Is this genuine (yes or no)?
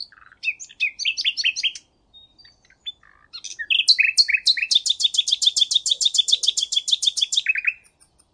yes